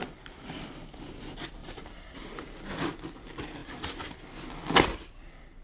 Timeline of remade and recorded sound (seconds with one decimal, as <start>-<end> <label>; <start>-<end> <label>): 0.0-1.6 recorded; 1.6-2.5 remade; 2.5-5.6 recorded